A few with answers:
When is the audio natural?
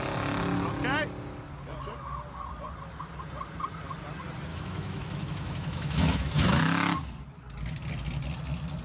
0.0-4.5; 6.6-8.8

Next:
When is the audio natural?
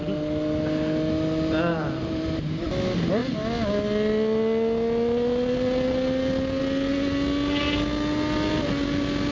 0.0-1.7; 2.7-9.3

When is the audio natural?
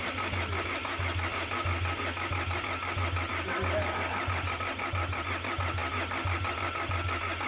0.0-7.5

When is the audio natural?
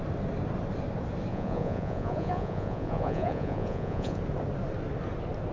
0.0-1.3; 4.2-5.5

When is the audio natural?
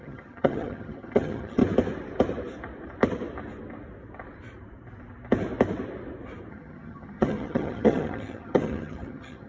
1.6-6.5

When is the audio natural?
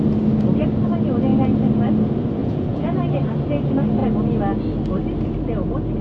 0.0-2.4; 3.0-6.0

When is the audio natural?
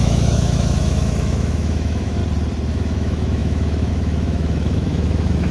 2.2-2.7